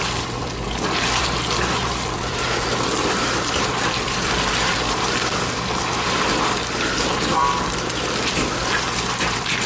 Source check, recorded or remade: remade